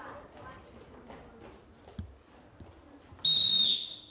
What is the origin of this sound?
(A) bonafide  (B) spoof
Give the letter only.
A